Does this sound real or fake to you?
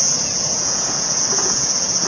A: fake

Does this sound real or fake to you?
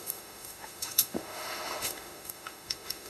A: fake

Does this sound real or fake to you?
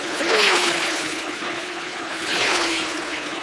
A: fake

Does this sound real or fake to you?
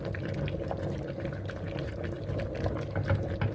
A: real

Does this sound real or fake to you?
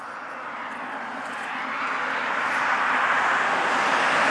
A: real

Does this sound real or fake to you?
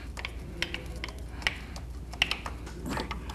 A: real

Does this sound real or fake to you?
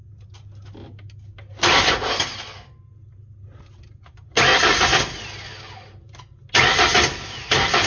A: real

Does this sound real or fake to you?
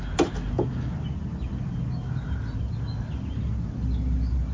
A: real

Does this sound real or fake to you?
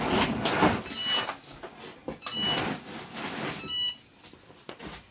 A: real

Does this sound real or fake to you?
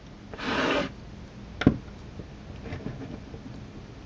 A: real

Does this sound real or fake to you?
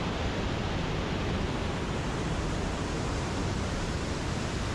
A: real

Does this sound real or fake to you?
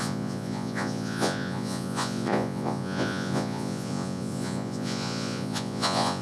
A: fake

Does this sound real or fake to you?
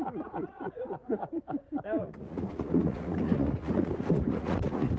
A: fake